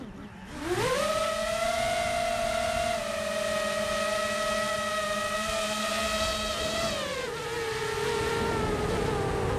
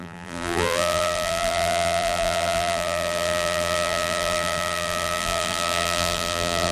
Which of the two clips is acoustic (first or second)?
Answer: first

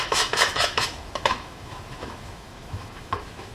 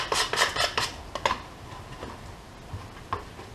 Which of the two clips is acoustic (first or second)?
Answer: second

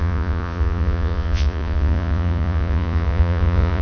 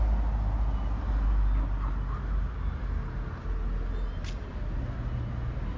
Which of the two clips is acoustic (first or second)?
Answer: second